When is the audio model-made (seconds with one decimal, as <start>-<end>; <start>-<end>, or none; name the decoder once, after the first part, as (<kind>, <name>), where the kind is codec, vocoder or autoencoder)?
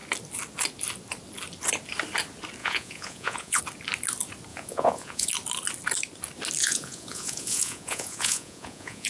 2.6-3.6 (vocoder, Vocos); 4.5-5.3; 6.6-9.1